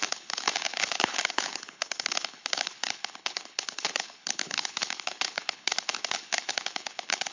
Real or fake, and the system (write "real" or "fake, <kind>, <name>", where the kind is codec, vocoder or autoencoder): fake, codec, HILCodec